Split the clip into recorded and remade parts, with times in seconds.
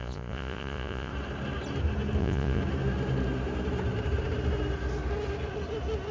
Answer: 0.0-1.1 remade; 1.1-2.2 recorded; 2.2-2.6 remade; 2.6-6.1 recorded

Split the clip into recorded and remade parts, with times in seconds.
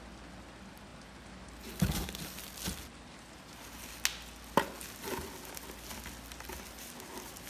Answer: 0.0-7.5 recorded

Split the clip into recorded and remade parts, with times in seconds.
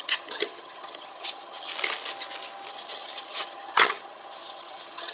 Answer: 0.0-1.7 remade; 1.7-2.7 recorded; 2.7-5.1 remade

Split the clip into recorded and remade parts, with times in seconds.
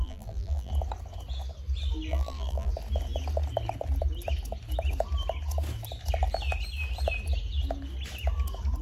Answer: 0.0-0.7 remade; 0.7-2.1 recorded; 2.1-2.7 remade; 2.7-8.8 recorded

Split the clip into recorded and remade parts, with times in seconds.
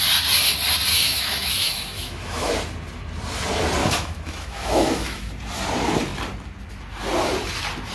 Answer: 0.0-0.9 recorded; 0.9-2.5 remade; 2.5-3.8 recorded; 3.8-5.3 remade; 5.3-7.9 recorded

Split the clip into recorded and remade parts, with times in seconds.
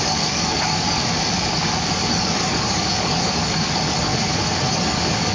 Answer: 0.0-4.1 remade; 4.1-4.7 recorded; 4.7-5.3 remade